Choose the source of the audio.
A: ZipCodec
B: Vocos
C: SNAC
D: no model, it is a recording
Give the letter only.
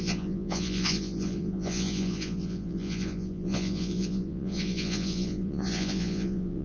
B